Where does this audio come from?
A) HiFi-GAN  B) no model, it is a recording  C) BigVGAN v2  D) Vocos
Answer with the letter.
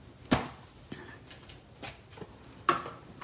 B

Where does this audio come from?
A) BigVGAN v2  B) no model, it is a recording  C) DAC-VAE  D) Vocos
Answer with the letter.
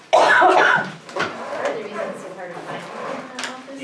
B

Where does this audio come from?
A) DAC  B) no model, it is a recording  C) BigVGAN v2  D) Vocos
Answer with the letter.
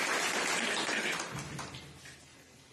B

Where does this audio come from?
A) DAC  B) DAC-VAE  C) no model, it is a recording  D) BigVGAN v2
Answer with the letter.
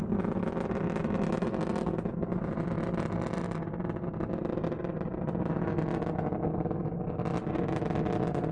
C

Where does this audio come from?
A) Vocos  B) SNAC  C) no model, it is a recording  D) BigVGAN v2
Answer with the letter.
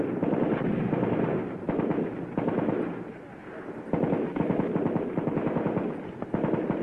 C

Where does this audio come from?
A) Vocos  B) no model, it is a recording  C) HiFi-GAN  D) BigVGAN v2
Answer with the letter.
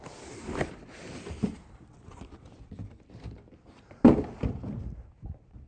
D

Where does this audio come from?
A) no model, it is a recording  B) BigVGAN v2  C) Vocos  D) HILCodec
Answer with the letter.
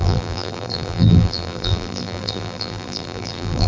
B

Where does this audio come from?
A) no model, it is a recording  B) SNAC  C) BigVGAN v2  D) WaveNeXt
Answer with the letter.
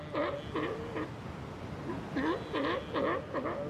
A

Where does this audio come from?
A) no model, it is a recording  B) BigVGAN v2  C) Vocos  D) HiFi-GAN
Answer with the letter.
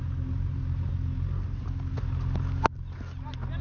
A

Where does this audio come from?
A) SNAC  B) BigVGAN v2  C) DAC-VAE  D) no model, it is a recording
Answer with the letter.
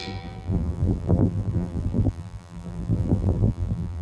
B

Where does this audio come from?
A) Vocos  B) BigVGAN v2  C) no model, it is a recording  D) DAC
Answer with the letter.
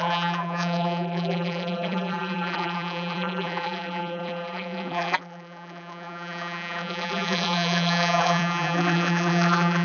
B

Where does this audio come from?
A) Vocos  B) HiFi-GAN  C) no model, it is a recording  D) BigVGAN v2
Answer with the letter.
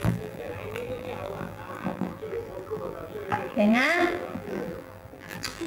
D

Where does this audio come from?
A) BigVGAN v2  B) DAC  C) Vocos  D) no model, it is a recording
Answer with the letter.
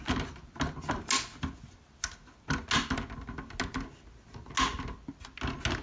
D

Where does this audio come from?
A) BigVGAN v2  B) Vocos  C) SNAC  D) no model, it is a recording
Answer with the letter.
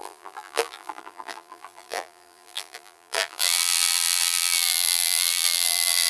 A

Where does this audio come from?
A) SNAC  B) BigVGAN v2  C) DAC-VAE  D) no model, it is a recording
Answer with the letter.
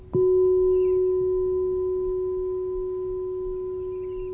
D